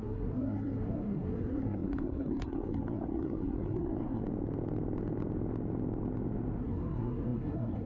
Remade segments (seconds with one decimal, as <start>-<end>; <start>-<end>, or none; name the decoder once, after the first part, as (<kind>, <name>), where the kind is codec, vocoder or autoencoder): 0.0-4.2 (codec, SNAC); 6.6-7.9